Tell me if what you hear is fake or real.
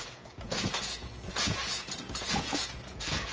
fake